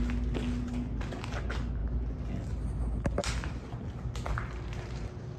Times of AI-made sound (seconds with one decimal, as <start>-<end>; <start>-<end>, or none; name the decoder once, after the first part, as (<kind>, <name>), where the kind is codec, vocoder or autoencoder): none